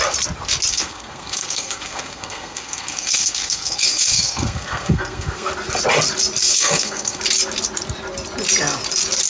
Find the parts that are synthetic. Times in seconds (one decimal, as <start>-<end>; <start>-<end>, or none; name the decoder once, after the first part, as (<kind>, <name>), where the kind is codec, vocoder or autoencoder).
0.7-5.5 (codec, SNAC); 6.4-7.2

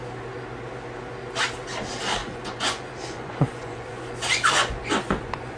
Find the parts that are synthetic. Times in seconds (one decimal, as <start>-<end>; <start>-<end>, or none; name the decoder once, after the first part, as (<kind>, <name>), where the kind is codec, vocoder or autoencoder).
2.2-5.6 (vocoder, Vocos)